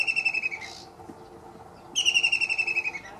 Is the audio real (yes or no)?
yes